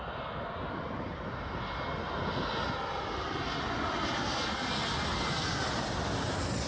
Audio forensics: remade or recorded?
recorded